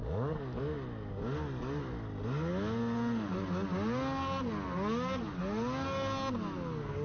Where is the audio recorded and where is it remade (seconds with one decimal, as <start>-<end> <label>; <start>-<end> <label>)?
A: 0.0-0.6 remade; 0.6-7.0 recorded